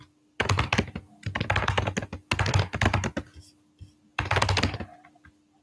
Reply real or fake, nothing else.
real